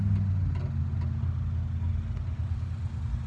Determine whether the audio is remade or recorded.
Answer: recorded